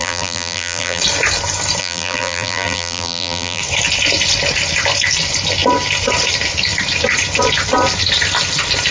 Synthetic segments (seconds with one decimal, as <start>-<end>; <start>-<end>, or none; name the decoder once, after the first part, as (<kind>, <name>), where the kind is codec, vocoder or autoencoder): 0.0-1.0 (vocoder, BigVGAN v2); 1.8-3.6

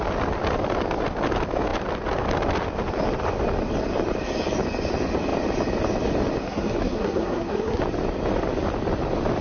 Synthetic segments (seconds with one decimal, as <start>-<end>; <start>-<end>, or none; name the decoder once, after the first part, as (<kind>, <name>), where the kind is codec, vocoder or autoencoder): 6.4-7.8 (codec, SNAC)